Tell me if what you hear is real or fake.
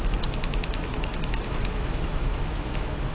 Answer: fake